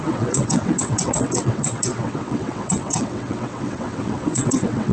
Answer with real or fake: fake